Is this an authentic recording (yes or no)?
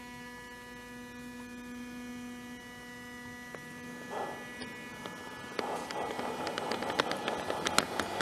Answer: yes